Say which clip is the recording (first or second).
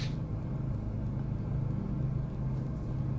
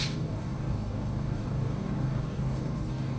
first